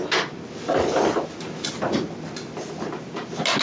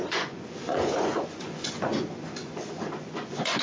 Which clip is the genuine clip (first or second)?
first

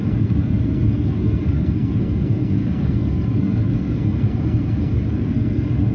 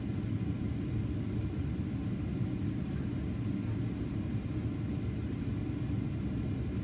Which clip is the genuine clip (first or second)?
second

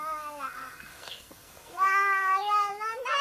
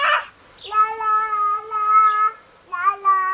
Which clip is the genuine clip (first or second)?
second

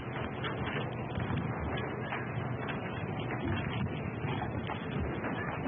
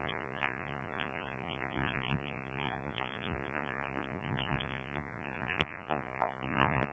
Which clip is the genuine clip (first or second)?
first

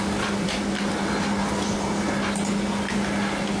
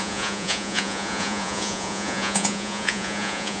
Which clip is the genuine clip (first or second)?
first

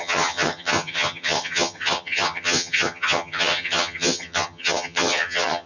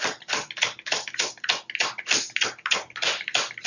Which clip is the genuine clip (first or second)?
second